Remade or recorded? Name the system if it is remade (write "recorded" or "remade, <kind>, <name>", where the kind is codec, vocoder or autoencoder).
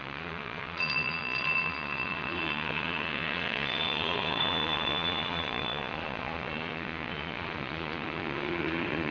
remade, vocoder, Vocos